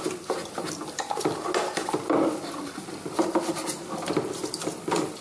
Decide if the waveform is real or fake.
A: real